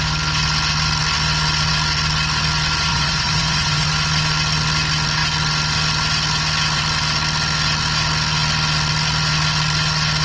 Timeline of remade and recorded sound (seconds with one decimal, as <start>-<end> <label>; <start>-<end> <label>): 0.0-2.9 recorded; 2.9-3.9 remade; 3.9-10.2 recorded